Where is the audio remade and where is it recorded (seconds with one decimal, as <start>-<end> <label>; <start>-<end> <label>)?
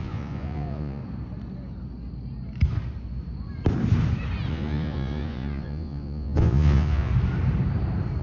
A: 0.0-1.0 remade; 1.0-4.5 recorded; 4.5-7.1 remade; 7.1-8.2 recorded